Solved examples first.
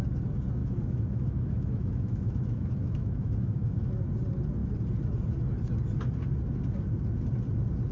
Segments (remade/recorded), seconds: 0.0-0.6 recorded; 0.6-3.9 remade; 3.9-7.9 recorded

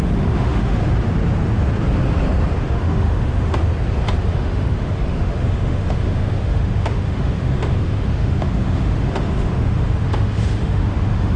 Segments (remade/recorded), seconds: 0.0-0.8 remade; 0.8-2.6 recorded; 2.6-3.7 remade; 3.7-4.3 recorded; 4.3-11.4 remade